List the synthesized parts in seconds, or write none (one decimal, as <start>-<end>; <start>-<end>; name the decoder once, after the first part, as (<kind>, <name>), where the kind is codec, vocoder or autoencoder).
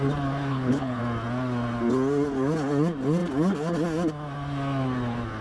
0.5-1.0 (codec, HILCodec)